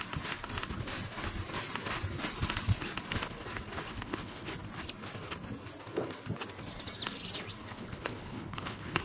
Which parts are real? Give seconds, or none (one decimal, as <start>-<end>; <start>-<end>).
0.0-3.9; 4.5-7.6